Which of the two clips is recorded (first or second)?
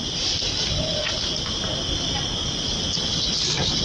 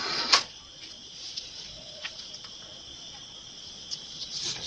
first